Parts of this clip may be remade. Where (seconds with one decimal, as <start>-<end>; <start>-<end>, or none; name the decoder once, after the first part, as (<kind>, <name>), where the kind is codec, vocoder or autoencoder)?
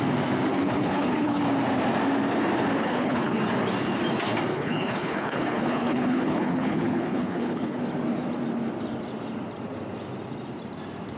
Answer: 0.5-1.4 (codec, HILCodec); 2.8-3.4; 4.5-7.8